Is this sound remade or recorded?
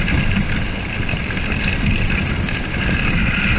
recorded